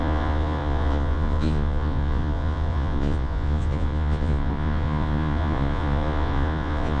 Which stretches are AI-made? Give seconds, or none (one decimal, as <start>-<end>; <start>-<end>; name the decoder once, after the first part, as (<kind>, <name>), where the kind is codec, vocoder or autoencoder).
0.0-7.0 (vocoder, Vocos)